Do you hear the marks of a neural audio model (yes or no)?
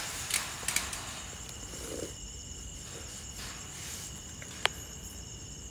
yes